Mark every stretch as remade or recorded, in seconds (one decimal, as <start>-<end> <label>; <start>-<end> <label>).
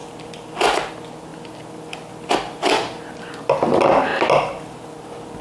0.0-5.4 recorded